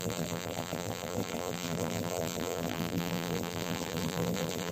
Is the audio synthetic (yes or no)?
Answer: yes